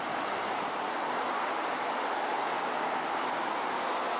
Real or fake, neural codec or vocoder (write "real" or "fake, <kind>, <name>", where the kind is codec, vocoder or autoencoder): real